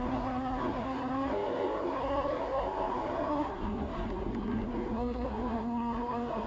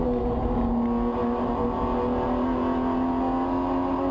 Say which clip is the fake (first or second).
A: first